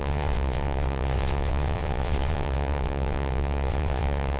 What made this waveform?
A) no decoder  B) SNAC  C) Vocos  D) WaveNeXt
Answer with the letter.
D